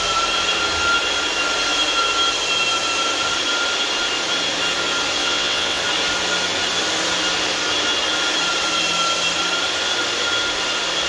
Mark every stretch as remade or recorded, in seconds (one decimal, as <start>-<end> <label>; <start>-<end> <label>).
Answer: 0.0-5.2 recorded; 5.2-5.8 remade; 5.8-11.1 recorded